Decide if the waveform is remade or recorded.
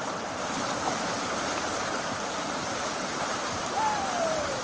remade